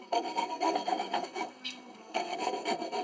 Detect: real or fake fake